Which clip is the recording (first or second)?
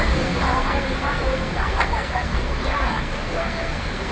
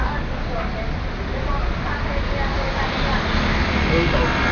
second